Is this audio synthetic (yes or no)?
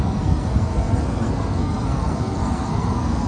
yes